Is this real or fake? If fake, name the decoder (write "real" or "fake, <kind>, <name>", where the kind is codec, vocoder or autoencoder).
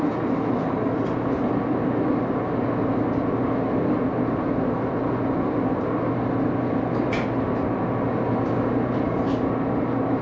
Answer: real